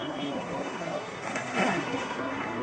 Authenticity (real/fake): fake